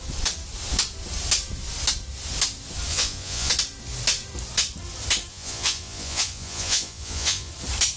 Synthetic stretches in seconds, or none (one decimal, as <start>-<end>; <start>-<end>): 2.9-3.5; 5.3-7.5

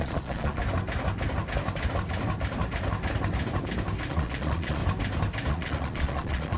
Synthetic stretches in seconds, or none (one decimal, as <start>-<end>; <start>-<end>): 0.0-0.6; 4.1-4.8; 5.5-6.6

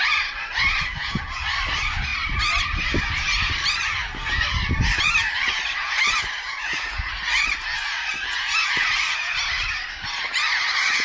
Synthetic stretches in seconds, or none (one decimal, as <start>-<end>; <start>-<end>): 6.6-7.5

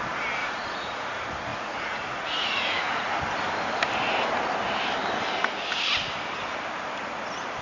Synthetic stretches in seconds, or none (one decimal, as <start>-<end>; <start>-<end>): 0.4-1.0; 1.5-3.2

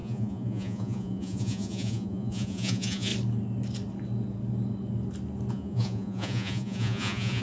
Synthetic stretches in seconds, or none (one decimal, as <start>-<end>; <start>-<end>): 0.0-3.1; 5.5-7.4

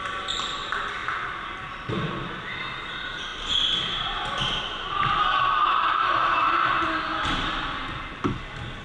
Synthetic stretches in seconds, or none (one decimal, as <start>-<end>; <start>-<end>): none

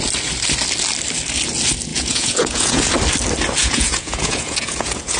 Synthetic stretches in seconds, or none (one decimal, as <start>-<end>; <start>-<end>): 1.9-2.8; 3.6-5.2